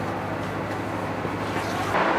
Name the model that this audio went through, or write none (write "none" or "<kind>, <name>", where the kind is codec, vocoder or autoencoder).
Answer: none